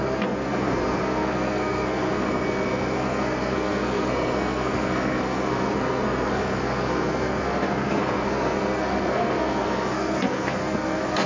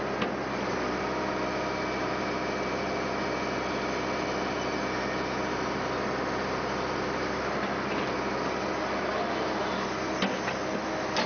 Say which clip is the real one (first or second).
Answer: second